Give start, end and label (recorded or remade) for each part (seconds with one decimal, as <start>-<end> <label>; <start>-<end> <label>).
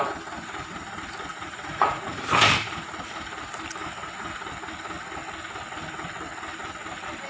0.0-1.3 recorded; 1.3-2.2 remade; 2.2-7.3 recorded